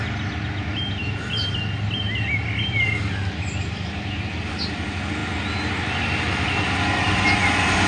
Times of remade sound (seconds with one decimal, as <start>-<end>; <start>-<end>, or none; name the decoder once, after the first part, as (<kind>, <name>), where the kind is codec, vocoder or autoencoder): 1.0-1.5 (vocoder, BigVGAN v2)